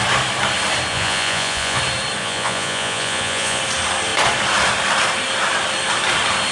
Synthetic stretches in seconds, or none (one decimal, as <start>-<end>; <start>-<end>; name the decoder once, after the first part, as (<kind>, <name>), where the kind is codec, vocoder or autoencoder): 0.9-1.8 (vocoder, Vocos); 2.2-3.6